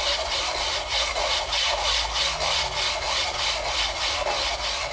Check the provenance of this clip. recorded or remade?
recorded